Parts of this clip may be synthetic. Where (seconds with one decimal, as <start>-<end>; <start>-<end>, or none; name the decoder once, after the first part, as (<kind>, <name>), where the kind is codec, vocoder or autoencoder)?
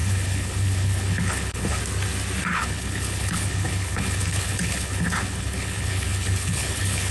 0.0-1.8 (codec, HILCodec); 2.5-7.1